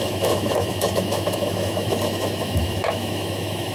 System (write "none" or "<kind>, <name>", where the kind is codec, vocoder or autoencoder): autoencoder, DAC-VAE